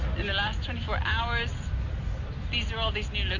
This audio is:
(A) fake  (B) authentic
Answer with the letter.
B